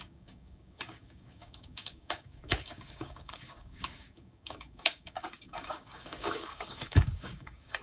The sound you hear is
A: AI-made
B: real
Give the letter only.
A